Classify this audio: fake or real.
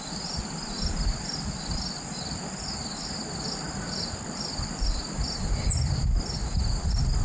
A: real